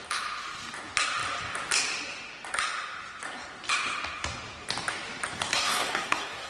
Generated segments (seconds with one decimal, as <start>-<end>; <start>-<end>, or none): 5.5-6.5